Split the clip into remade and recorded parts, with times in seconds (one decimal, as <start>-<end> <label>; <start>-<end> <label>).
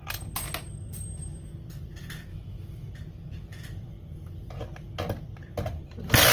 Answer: 0.0-2.3 recorded; 2.3-2.9 remade; 2.9-6.3 recorded